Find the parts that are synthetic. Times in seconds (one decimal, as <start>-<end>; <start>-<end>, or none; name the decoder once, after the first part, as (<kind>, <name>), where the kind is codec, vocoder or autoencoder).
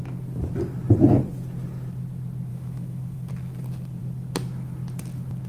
2.5-3.3 (autoencoder, DAC-VAE)